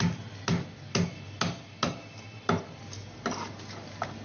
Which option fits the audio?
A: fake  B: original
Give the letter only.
B